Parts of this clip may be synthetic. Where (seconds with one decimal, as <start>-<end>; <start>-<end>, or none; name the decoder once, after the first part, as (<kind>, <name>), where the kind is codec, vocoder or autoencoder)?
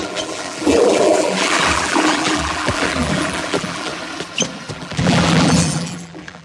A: 0.0-3.9 (vocoder, BigVGAN v2); 4.7-6.4